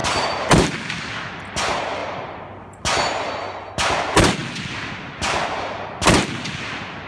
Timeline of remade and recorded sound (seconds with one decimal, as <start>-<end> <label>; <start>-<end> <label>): 0.0-7.1 recorded